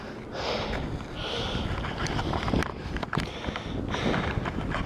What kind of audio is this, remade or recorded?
recorded